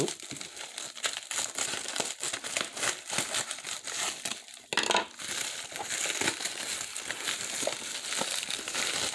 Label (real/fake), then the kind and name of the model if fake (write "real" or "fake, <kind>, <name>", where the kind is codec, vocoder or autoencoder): real